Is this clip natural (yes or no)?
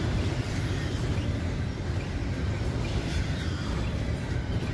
no